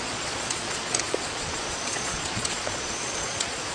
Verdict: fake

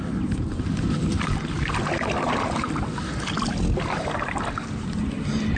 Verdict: real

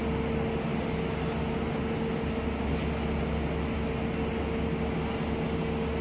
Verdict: real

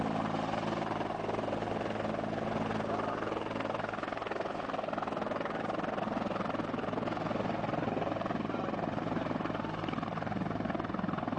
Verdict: real